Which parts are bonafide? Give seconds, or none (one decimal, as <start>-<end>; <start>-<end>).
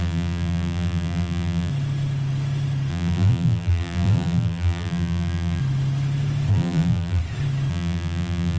1.7-2.9; 5.6-6.5; 7.2-7.7